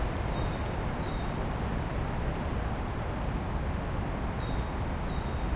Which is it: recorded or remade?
recorded